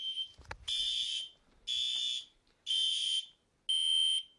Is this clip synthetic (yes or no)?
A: no